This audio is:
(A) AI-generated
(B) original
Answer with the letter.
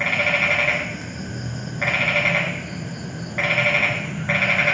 B